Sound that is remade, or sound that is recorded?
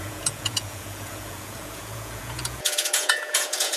remade